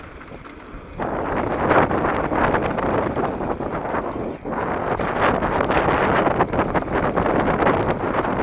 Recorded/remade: recorded